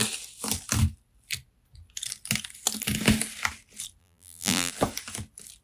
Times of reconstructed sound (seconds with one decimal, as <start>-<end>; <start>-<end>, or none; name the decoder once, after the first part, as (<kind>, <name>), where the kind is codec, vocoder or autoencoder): 4.0-4.7 (vocoder, BigVGAN v2)